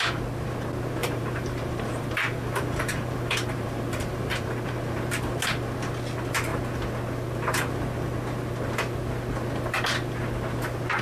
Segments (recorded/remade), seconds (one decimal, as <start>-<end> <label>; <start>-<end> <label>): 0.0-1.0 recorded; 1.0-5.1 remade; 5.1-11.0 recorded